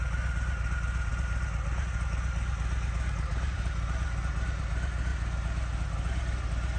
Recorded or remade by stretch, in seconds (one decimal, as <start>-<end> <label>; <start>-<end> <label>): 0.0-6.8 recorded